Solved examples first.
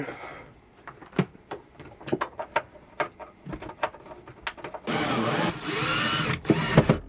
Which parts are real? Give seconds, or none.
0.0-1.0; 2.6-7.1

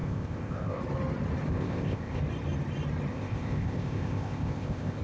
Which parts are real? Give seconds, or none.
0.8-1.5; 2.2-3.1

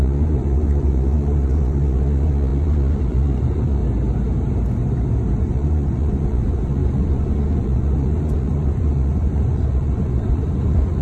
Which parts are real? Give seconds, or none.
3.8-5.4

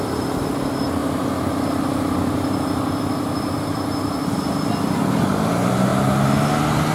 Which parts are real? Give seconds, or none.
0.0-5.9; 6.4-6.9

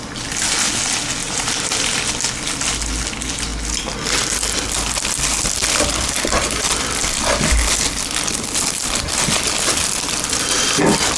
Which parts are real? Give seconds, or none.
0.0-1.2; 2.1-11.2